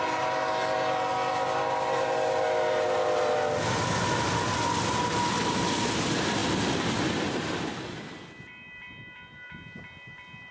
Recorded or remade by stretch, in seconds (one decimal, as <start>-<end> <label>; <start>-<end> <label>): 0.0-10.5 recorded